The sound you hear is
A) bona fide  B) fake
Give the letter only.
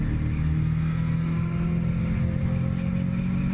A